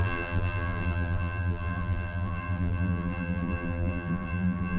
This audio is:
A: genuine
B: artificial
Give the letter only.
B